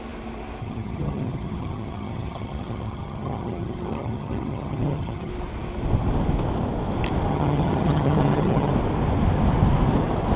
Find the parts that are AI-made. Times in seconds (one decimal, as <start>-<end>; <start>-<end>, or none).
0.6-5.3; 7.3-8.7